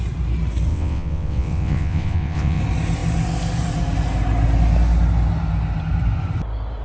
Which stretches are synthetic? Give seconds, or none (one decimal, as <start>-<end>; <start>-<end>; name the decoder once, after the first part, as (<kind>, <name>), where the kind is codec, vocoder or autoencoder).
0.7-2.6 (vocoder, WaveNeXt)